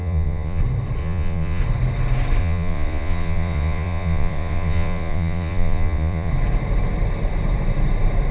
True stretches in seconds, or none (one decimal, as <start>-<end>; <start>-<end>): 0.6-1.0; 1.6-2.4; 6.3-8.3